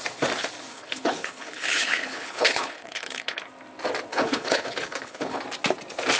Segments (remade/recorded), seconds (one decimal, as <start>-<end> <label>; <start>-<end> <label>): 0.0-0.7 recorded; 0.7-3.4 remade; 3.4-4.1 recorded; 4.1-5.4 remade; 5.4-6.2 recorded